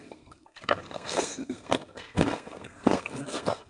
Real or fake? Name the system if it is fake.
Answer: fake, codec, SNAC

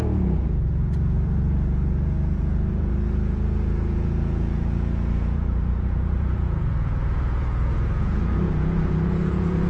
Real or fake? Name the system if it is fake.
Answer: fake, vocoder, Vocos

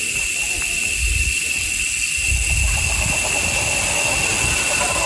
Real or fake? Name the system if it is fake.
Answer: real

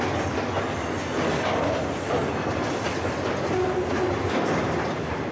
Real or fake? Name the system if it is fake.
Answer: real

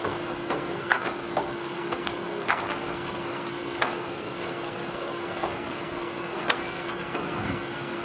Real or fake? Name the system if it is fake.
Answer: fake, codec, SNAC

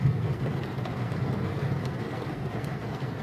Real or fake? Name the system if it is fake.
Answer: fake, codec, SNAC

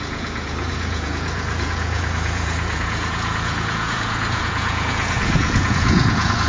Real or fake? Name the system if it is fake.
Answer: fake, vocoder, Vocos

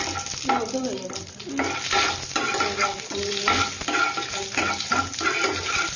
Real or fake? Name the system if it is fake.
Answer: real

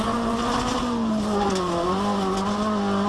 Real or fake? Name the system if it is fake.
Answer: real